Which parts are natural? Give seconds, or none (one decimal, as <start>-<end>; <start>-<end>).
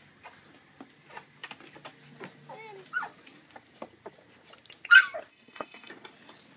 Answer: 0.0-5.3; 5.9-6.6